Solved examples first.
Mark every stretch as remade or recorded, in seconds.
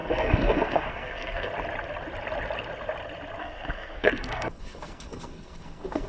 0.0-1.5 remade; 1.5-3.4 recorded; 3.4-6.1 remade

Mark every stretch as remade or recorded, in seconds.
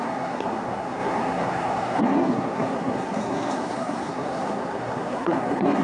0.0-5.8 remade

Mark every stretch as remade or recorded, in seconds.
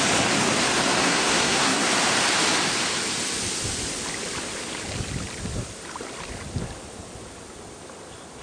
0.0-1.0 recorded; 1.0-1.9 remade; 1.9-8.4 recorded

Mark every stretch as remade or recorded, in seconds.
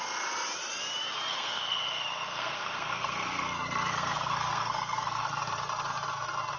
0.0-1.3 recorded; 1.3-5.3 remade; 5.3-6.6 recorded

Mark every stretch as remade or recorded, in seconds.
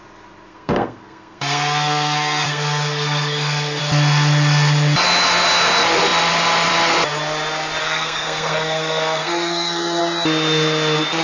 0.0-0.5 recorded; 0.5-3.8 remade; 3.8-7.8 recorded; 7.8-10.0 remade; 10.0-11.2 recorded